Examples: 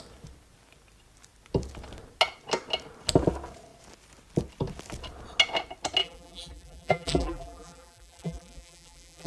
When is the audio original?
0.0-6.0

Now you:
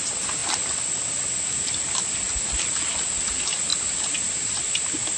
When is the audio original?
0.0-3.7; 4.6-5.2

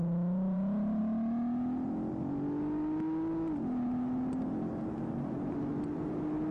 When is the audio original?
1.0-4.9

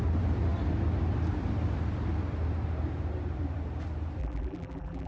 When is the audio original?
0.0-4.2

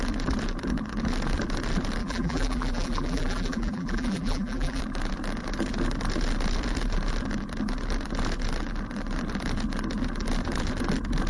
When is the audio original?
0.0-2.0; 4.8-11.3